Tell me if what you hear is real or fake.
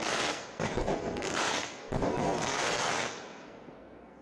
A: fake